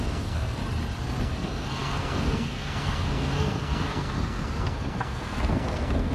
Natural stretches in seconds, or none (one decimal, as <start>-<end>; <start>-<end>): 0.6-1.2